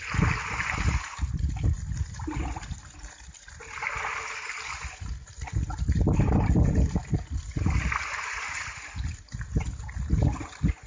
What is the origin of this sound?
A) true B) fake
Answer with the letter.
B